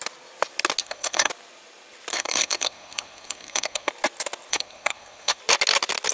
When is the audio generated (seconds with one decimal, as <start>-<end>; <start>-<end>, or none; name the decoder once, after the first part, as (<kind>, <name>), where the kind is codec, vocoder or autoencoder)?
0.8-1.3 (codec, SNAC); 2.1-3.9; 4.5-5.4